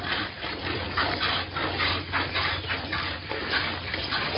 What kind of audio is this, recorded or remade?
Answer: recorded